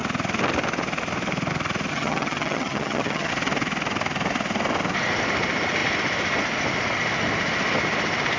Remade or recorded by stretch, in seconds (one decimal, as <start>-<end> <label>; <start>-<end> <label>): 0.0-1.9 recorded; 1.9-3.3 remade; 3.3-8.4 recorded